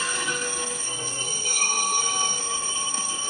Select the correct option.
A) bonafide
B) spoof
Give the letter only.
B